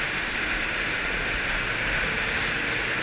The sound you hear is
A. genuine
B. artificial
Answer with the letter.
A